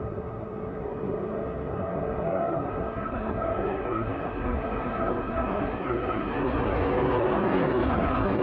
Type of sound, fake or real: fake